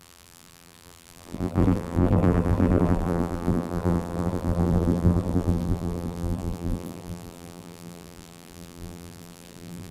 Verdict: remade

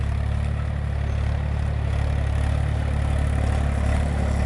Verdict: recorded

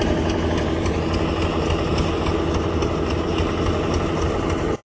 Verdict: recorded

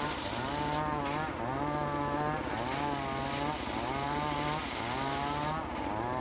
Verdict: recorded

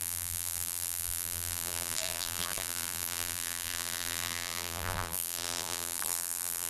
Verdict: remade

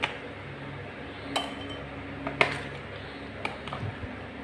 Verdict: recorded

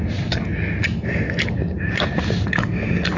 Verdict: recorded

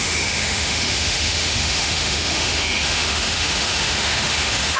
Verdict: remade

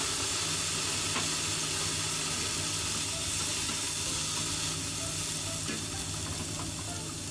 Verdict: recorded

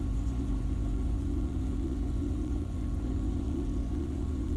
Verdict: remade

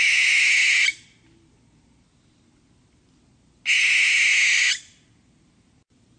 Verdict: recorded